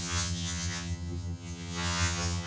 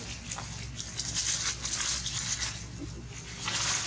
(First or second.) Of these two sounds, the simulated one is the first